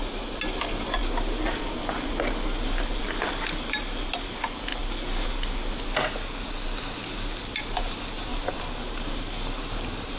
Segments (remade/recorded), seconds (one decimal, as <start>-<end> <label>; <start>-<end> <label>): 0.0-10.2 recorded